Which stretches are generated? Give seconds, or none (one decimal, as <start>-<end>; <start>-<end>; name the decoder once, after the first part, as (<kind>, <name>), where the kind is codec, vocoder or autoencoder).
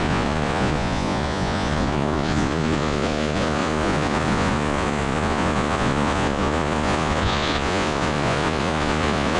0.0-9.4 (vocoder, Vocos)